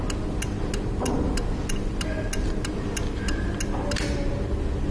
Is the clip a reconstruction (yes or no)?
no